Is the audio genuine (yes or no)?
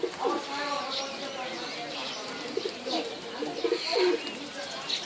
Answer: yes